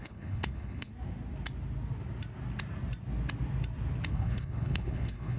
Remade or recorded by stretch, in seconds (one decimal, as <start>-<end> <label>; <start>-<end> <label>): 0.0-0.9 remade; 0.9-4.1 recorded; 4.1-5.4 remade